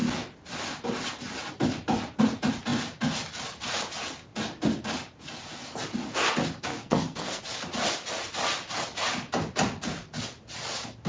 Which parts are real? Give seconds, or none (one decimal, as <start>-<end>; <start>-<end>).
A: 0.0-6.7; 7.4-11.1